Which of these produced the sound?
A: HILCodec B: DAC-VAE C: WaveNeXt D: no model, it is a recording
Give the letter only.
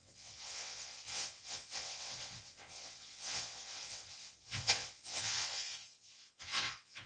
C